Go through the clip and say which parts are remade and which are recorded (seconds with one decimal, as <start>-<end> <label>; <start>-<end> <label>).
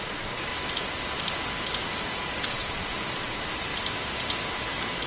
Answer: 0.0-0.5 remade; 0.5-2.5 recorded; 2.5-3.7 remade; 3.7-5.1 recorded